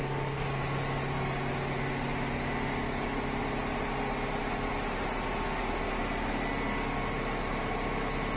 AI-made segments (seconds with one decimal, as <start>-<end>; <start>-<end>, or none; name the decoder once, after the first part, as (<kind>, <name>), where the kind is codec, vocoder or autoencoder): none